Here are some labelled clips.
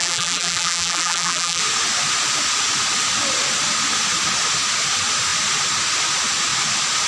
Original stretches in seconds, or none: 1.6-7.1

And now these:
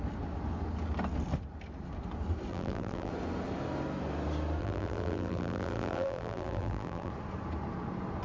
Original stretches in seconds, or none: 0.0-2.5; 3.1-4.6; 7.1-8.2

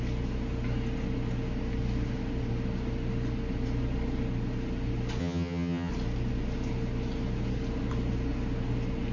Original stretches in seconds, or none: 0.0-5.2; 5.9-9.1

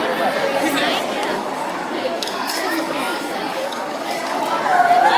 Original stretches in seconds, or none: 0.0-1.3; 4.4-5.2

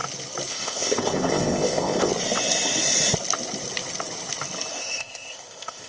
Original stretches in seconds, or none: 0.0-0.5; 2.1-4.7

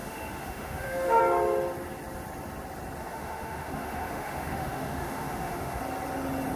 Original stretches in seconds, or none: 1.2-3.0; 5.8-6.6